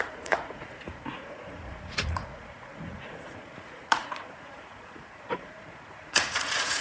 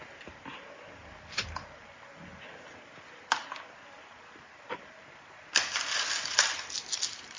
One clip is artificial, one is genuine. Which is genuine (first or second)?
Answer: second